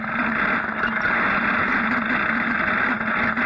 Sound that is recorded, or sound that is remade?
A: recorded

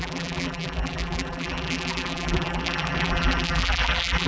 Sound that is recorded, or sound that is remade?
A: remade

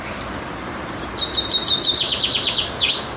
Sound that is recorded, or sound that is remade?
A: recorded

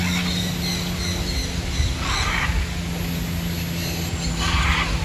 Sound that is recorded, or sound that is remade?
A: recorded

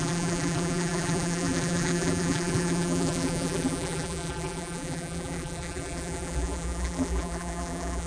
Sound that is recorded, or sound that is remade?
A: remade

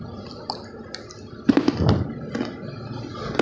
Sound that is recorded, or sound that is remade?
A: recorded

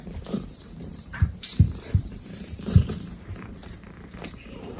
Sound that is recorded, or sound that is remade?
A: remade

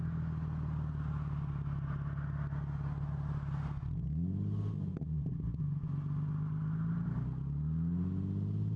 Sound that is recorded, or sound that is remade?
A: recorded